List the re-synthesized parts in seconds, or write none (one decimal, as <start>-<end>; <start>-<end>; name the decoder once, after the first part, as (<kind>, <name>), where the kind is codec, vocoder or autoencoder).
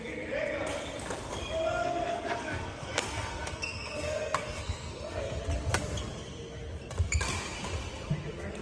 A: 1.8-5.4 (codec, SNAC)